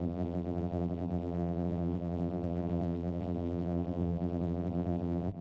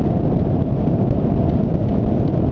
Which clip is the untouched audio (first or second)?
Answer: second